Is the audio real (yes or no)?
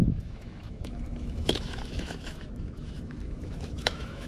no